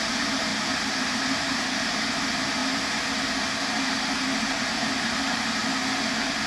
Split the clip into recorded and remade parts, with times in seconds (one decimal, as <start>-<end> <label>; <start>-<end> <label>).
0.0-2.6 remade; 2.6-4.4 recorded; 4.4-5.6 remade; 5.6-6.1 recorded; 6.1-6.5 remade

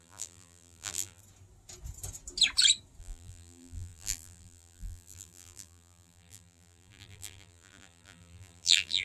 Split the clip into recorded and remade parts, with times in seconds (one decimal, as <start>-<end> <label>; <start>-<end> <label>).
0.0-1.2 remade; 1.2-3.0 recorded; 3.0-9.0 remade

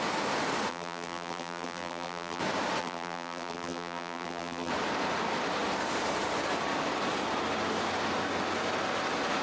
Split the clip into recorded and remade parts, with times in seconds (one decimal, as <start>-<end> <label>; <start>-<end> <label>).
0.0-0.7 recorded; 0.7-2.4 remade; 2.4-2.8 recorded; 2.8-4.7 remade; 4.7-9.4 recorded

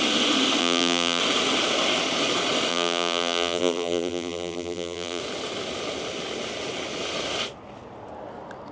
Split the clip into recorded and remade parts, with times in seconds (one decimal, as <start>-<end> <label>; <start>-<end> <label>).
0.0-0.6 recorded; 0.6-1.2 remade; 1.2-2.7 recorded; 2.7-5.2 remade; 5.2-8.7 recorded

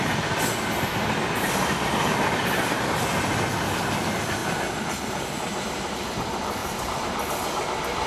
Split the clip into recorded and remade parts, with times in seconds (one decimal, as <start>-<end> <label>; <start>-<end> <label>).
0.0-4.4 recorded; 4.4-5.9 remade; 5.9-6.6 recorded; 6.6-7.3 remade; 7.3-8.1 recorded

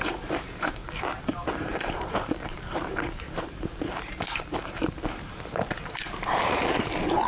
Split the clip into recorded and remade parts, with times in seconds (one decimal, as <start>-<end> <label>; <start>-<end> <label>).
0.0-0.8 remade; 0.8-1.5 recorded; 1.5-7.3 remade

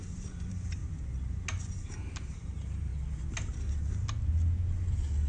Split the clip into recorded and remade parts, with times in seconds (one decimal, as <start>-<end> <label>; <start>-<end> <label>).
0.0-0.8 remade; 0.8-2.4 recorded; 2.4-2.9 remade; 2.9-5.3 recorded

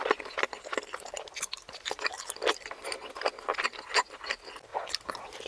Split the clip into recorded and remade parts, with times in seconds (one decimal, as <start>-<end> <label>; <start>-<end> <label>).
0.0-4.7 recorded; 4.7-5.5 remade